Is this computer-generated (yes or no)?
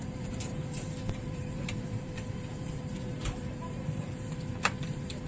yes